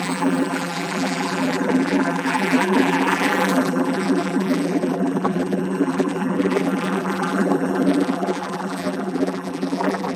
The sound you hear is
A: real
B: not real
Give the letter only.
B